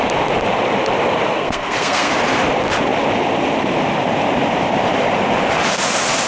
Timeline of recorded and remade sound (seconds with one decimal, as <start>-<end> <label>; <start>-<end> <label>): 0.0-1.3 recorded; 1.3-2.1 remade; 2.1-6.3 recorded

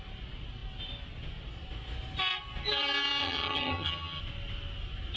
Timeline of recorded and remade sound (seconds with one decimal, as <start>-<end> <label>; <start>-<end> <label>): 0.0-3.2 recorded; 3.2-4.2 remade; 4.2-5.2 recorded

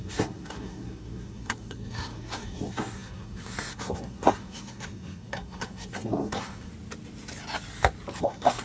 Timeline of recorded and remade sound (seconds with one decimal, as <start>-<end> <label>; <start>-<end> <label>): 0.0-6.7 remade; 6.7-8.2 recorded; 8.2-8.6 remade

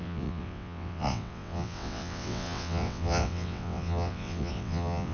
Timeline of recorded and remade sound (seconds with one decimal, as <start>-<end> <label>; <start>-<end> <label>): 0.0-5.1 remade